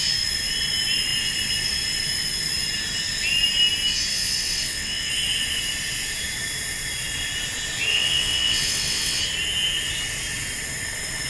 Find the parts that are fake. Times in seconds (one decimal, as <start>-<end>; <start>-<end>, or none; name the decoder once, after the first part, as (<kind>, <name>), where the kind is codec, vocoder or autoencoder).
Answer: 4.1-5.1 (vocoder, WaveNeXt); 7.9-9.2